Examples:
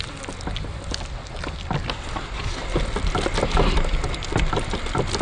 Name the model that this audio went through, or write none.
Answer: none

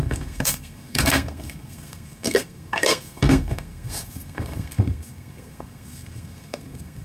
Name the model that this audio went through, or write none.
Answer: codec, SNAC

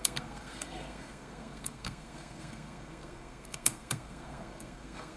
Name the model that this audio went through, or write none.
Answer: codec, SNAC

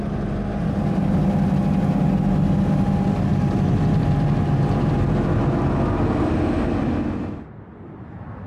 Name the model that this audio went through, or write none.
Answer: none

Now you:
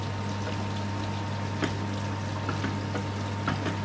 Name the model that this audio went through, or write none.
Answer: none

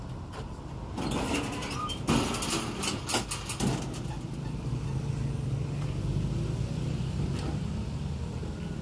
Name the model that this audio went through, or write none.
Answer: none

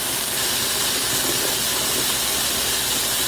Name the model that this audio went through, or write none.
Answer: none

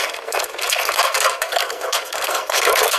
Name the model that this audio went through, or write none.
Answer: codec, SNAC